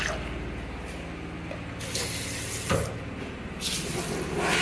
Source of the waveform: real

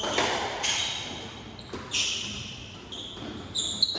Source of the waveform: real